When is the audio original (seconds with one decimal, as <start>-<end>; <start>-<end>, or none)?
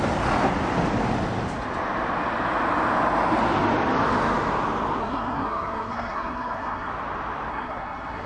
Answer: 0.0-5.0; 6.9-7.5